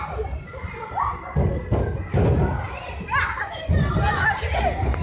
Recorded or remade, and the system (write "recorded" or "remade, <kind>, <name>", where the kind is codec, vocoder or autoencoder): recorded